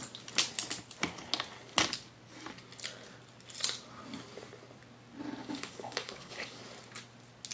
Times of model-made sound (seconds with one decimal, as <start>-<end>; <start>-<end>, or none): 5.4-6.6